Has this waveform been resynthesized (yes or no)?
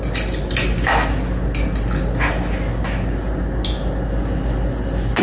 no